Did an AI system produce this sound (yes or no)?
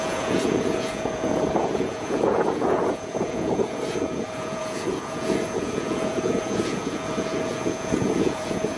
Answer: yes